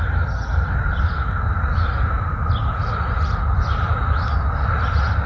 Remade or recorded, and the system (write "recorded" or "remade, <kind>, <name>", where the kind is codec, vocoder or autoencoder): recorded